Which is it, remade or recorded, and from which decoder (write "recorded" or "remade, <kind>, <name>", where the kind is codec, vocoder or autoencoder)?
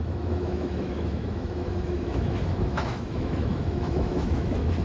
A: remade, autoencoder, DAC-VAE